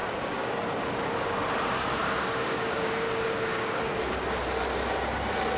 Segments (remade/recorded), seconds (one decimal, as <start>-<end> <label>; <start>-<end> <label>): 0.0-0.5 remade; 0.5-2.0 recorded; 2.0-3.7 remade; 3.7-5.6 recorded